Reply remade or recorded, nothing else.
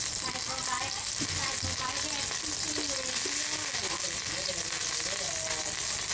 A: recorded